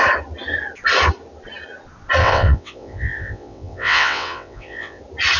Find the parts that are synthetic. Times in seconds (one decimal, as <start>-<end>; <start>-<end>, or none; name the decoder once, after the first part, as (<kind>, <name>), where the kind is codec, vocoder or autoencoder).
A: 2.2-5.0 (vocoder, WaveNeXt)